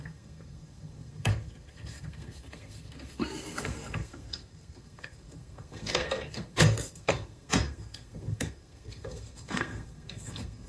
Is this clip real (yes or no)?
no